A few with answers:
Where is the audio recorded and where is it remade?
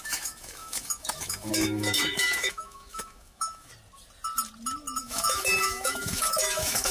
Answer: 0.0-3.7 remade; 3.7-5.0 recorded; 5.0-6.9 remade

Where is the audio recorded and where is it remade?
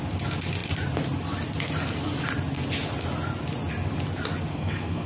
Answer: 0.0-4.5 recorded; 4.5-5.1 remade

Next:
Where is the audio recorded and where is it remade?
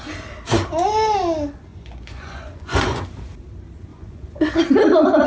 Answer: 0.0-1.7 recorded; 1.7-3.0 remade; 3.0-3.9 recorded; 3.9-4.5 remade; 4.5-5.3 recorded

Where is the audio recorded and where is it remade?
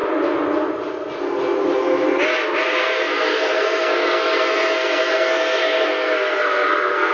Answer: 0.0-2.8 recorded; 2.8-7.1 remade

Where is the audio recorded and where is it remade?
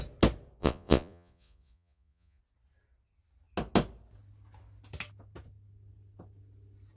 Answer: 0.0-0.6 recorded; 0.6-2.4 remade; 2.4-7.0 recorded